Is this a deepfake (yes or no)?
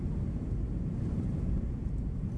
yes